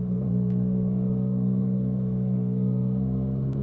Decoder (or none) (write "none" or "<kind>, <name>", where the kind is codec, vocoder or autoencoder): codec, SNAC